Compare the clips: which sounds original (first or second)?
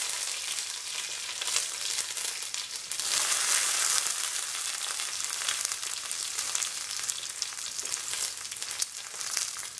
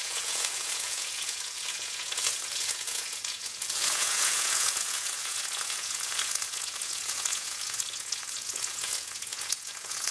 first